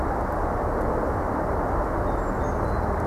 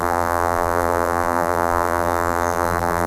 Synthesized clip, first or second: second